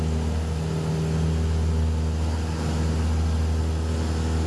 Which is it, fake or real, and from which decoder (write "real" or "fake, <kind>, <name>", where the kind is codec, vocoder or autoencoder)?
real